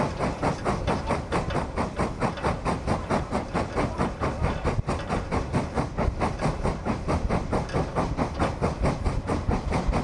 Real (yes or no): no